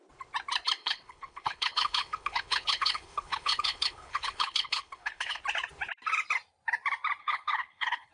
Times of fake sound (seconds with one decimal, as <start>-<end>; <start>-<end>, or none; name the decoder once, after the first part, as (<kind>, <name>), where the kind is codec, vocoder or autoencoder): 0.8-5.4 (codec, HILCodec); 7.2-8.1

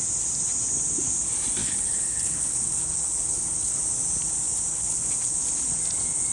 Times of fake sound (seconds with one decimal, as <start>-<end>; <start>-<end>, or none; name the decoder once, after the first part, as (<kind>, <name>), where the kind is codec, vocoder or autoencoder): 1.6-3.8 (codec, HILCodec); 4.7-5.4